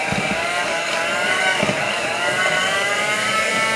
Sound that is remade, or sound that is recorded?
remade